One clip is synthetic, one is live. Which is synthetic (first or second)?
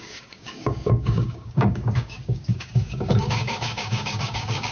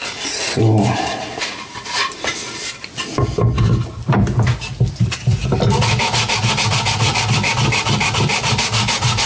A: first